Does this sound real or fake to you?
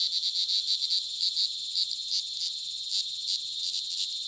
real